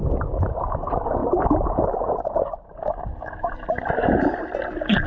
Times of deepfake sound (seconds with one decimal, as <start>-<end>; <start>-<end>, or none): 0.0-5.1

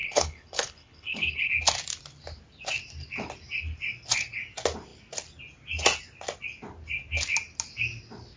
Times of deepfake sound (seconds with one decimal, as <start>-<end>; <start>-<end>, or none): 0.0-1.5

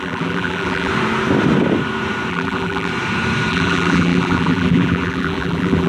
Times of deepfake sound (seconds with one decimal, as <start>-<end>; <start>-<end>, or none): 0.0-0.9; 2.3-2.9; 3.5-5.9